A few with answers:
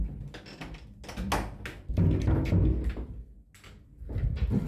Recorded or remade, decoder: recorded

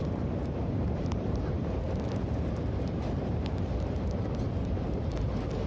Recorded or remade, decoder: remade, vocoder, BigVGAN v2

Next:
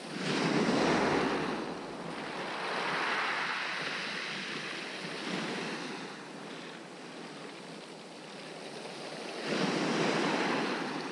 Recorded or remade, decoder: recorded